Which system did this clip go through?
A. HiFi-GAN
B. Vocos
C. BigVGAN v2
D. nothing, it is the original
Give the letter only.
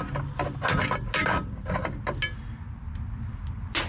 D